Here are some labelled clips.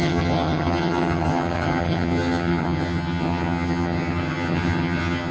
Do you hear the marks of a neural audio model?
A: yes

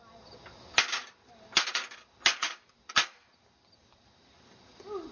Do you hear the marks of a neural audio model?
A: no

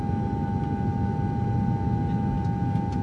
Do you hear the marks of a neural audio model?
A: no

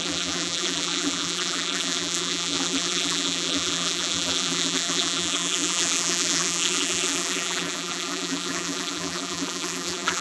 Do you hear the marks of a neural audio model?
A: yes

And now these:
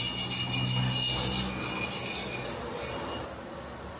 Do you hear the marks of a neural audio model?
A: no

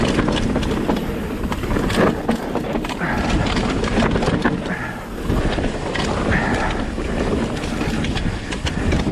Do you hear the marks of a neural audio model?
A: no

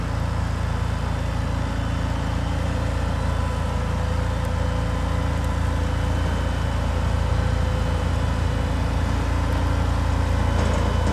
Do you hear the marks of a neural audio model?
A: no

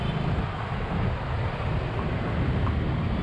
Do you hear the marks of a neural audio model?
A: no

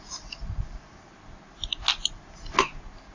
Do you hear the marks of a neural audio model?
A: no